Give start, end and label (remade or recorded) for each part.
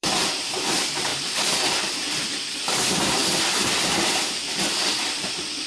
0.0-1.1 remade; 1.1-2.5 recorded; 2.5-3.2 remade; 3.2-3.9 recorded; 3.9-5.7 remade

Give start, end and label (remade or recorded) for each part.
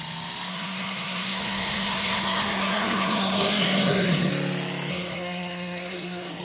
0.0-0.5 recorded; 0.5-4.3 remade; 4.3-4.9 recorded; 4.9-6.4 remade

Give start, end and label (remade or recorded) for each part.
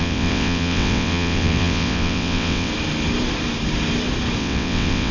0.0-2.7 remade; 2.7-4.4 recorded; 4.4-5.1 remade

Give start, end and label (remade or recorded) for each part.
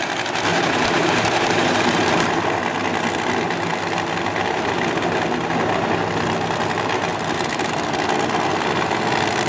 0.0-0.5 recorded; 0.5-2.6 remade; 2.6-7.1 recorded; 7.1-7.7 remade; 7.7-9.5 recorded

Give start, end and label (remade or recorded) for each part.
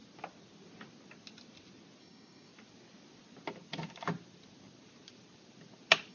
0.0-2.0 recorded; 2.0-2.5 remade; 2.5-6.1 recorded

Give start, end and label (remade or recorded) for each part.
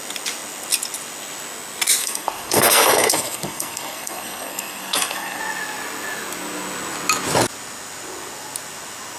0.0-2.0 recorded; 2.0-5.4 remade; 5.4-9.2 recorded